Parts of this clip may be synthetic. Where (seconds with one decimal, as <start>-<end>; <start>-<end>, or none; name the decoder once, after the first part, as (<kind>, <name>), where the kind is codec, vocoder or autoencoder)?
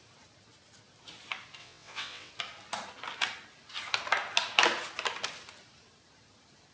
1.6-2.3 (vocoder, WaveNeXt)